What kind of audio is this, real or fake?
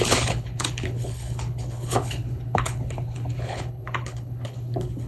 fake